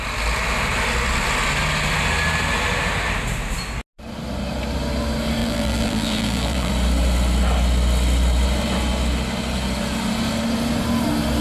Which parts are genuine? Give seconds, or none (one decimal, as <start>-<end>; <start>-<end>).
0.0-5.4; 6.7-11.4